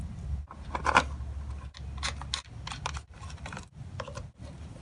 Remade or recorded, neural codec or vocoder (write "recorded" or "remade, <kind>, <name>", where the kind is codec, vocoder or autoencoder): recorded